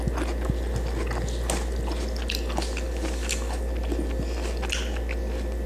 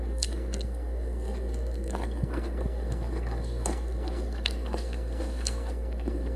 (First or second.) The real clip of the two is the first